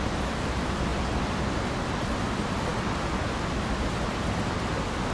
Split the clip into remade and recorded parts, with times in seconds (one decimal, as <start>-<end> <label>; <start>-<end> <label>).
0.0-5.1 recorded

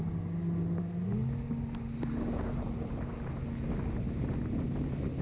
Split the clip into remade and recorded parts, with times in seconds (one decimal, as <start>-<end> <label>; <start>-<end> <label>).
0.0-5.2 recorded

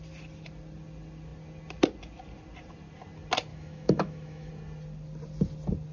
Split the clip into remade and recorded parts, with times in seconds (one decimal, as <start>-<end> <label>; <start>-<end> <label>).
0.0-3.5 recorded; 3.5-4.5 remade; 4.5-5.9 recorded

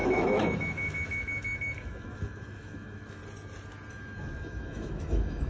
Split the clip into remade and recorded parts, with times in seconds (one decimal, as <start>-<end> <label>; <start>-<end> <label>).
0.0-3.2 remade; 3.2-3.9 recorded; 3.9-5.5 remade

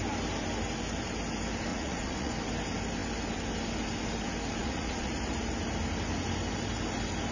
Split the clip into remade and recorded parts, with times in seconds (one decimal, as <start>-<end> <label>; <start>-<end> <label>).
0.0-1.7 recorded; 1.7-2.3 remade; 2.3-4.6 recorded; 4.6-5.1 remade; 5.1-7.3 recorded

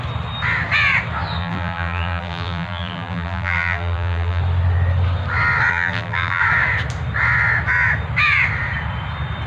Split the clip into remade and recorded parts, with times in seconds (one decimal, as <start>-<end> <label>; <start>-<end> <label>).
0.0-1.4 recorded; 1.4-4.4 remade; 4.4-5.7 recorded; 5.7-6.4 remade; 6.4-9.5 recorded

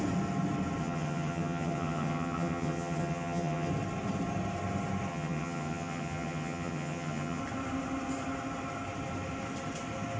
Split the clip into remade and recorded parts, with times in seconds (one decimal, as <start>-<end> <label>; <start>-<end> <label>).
0.0-0.8 recorded; 0.8-3.7 remade; 3.7-5.1 recorded; 5.1-7.4 remade; 7.4-10.2 recorded